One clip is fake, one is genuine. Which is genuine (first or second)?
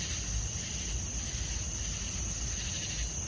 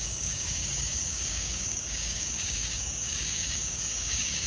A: first